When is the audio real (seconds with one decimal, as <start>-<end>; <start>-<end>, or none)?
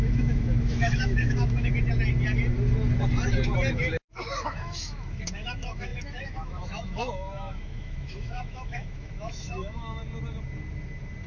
1.7-3.7; 10.0-11.3